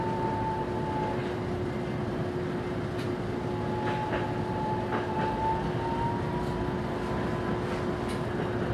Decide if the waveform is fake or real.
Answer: real